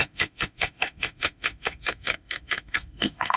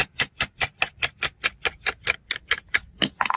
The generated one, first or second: first